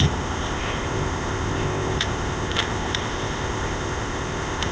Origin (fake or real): fake